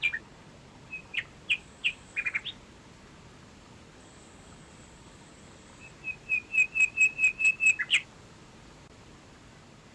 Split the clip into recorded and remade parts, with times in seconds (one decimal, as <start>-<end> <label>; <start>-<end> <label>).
0.0-1.6 recorded; 1.6-2.4 remade; 2.4-4.0 recorded; 4.0-5.9 remade; 5.9-9.9 recorded